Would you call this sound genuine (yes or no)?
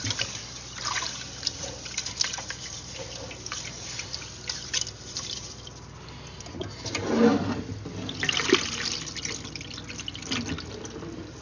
yes